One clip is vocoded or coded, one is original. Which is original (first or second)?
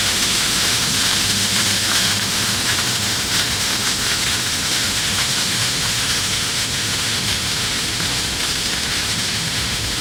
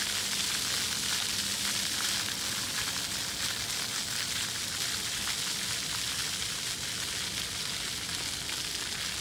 second